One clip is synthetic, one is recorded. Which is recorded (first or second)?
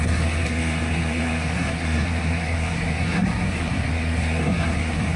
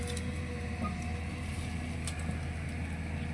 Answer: second